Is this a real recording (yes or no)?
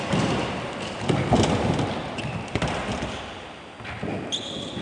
yes